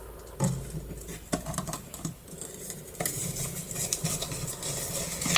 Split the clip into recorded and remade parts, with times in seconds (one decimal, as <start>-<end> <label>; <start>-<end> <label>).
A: 0.0-1.1 recorded; 1.1-1.9 remade; 1.9-3.6 recorded; 3.6-4.5 remade; 4.5-5.4 recorded